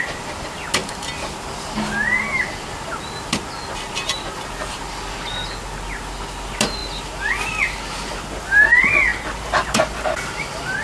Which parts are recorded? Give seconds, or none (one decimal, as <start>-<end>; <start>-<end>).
0.0-10.8